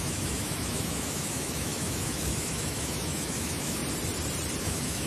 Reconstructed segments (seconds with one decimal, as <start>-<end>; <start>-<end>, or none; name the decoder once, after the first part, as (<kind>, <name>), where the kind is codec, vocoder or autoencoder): 0.0-3.8 (autoencoder, DAC-VAE); 4.6-5.1